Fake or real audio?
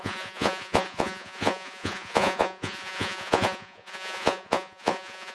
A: fake